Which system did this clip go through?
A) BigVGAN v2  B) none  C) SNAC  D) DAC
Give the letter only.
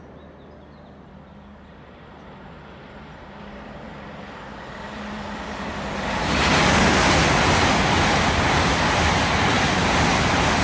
B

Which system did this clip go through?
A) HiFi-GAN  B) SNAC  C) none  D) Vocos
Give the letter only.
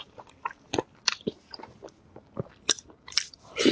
C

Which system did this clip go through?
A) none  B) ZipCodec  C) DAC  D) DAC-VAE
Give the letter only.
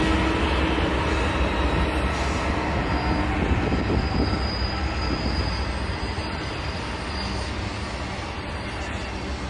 A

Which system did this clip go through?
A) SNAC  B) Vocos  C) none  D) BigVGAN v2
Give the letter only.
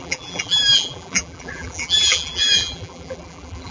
D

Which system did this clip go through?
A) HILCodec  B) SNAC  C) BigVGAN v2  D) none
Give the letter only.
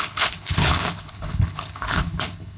A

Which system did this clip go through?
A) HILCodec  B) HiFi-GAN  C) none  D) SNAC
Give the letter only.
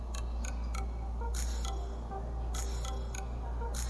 C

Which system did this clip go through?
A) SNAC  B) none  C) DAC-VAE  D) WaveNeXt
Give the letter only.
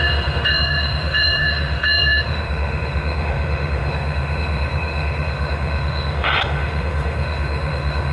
C